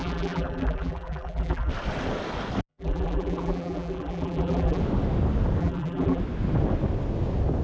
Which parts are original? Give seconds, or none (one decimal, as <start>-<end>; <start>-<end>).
1.7-2.7; 4.8-5.6; 6.2-7.6